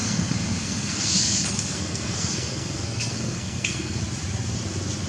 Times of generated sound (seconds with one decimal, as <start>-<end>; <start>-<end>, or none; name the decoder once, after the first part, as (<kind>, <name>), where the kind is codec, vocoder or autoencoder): 0.0-4.0 (codec, SNAC)